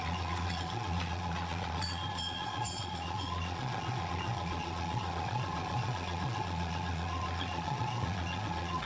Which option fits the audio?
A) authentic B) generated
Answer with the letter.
B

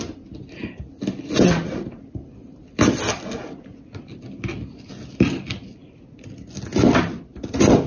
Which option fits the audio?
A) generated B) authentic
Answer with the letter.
B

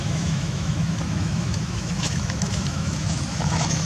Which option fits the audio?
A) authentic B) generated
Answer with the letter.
B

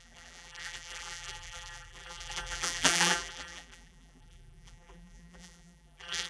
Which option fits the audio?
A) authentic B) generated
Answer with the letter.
B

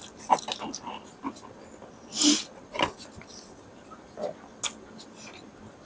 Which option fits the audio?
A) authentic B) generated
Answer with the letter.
A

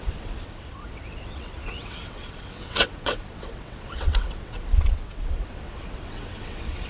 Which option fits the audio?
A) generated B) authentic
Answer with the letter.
A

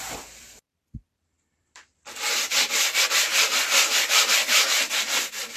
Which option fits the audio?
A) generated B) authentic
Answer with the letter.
A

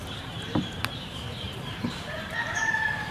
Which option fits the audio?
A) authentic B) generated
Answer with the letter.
B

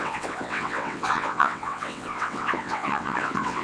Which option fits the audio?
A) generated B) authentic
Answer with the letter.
A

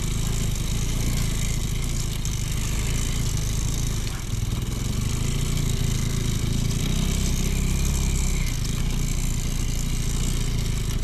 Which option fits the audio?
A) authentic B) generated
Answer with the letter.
A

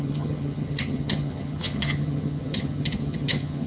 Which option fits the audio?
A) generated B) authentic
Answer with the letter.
A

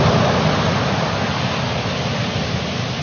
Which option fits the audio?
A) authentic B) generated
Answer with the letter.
A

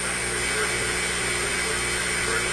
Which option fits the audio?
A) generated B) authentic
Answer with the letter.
B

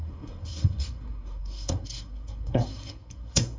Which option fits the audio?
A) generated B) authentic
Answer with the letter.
A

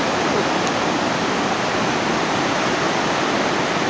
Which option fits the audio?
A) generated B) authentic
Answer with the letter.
B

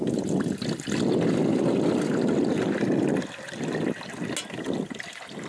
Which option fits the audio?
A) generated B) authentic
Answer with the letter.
B